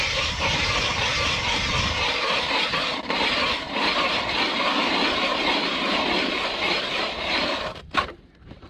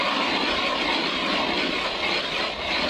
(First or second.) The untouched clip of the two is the second